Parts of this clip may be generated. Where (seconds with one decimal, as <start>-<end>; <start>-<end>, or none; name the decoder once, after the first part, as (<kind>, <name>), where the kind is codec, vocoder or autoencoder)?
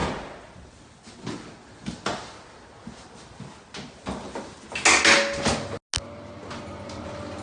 none